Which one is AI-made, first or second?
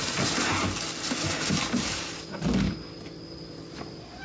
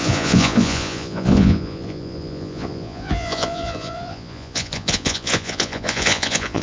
second